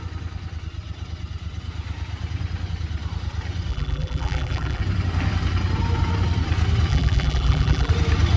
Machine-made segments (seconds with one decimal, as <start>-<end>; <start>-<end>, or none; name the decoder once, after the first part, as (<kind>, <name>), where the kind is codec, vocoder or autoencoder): 3.7-4.8 (vocoder, BigVGAN v2); 6.9-7.9